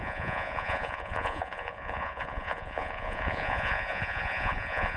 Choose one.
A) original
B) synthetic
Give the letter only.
B